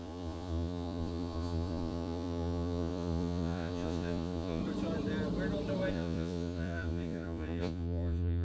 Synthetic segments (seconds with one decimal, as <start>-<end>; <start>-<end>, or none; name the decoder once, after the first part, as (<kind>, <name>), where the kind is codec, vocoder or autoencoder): 0.0-4.6 (vocoder, Vocos); 5.9-8.4